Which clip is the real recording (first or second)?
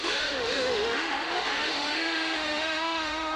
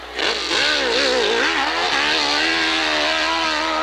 second